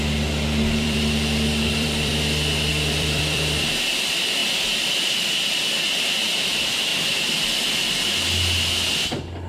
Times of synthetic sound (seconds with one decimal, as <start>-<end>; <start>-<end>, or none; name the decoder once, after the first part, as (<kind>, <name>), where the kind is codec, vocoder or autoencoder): 0.0-2.1 (vocoder, BigVGAN v2); 2.7-4.4; 6.4-6.9